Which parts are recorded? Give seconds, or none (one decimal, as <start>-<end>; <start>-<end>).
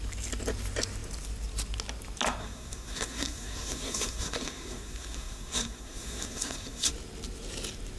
0.0-2.4; 6.9-8.0